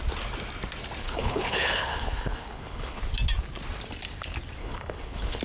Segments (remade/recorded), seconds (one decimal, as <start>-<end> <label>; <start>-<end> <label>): 0.0-1.0 recorded; 1.0-3.0 remade; 3.0-4.6 recorded; 4.6-5.4 remade